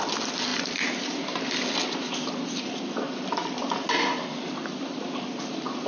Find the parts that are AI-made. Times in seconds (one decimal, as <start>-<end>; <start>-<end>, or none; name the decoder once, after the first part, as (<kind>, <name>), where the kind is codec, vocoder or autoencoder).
none